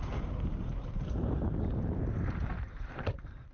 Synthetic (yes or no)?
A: yes